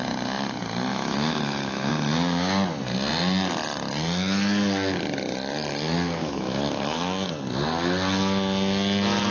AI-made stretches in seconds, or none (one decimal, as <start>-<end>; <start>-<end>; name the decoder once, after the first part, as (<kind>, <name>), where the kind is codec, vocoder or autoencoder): 0.9-1.9 (autoencoder, DAC-VAE); 6.2-7.0